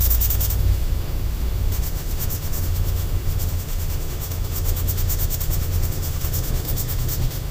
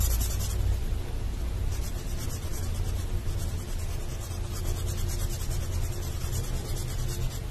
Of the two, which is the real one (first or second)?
second